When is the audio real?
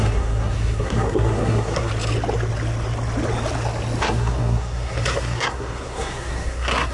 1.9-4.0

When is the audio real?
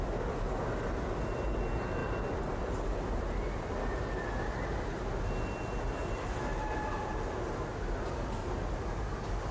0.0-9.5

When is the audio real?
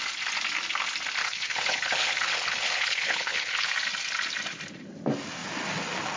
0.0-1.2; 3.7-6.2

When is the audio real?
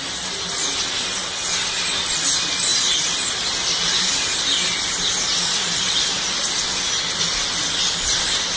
0.0-8.6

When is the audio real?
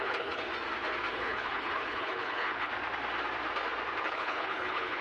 0.5-1.1; 2.7-4.0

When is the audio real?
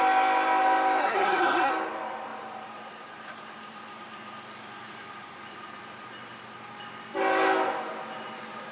0.0-1.0; 1.7-8.7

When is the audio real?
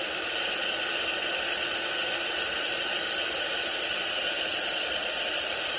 0.6-2.6